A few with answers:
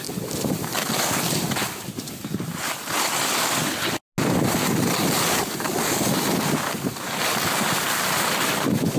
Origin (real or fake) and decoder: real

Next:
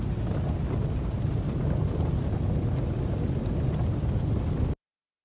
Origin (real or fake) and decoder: real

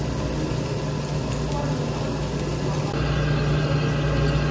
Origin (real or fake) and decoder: real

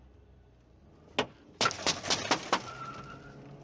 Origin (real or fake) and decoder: real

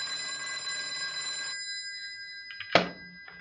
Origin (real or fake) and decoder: real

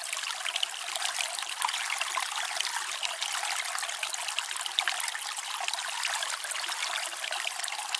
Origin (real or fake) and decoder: real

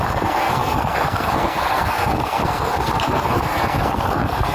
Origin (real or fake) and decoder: fake, codec, SNAC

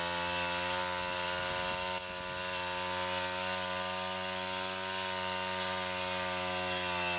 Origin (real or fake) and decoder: real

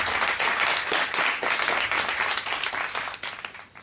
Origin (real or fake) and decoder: real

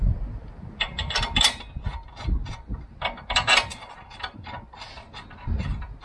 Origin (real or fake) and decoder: real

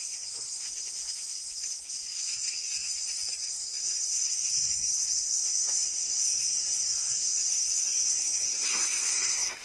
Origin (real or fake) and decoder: fake, codec, SNAC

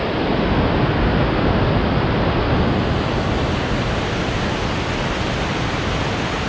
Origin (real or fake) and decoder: real